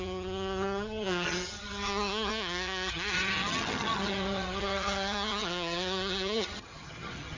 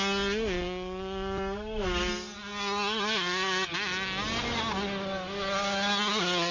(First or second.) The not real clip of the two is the first